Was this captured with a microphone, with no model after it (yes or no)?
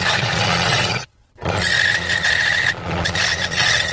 no